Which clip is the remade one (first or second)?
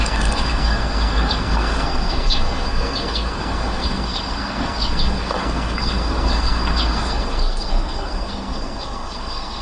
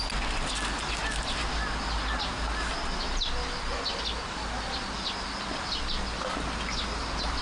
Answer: first